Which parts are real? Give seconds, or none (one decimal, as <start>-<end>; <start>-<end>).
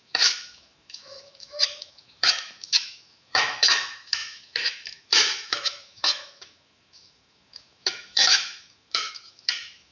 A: none